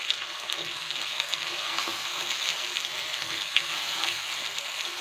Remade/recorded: remade